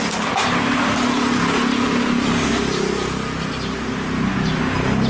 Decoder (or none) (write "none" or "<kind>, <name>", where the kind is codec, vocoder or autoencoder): none